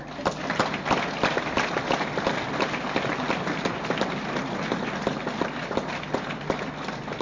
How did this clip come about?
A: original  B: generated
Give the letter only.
A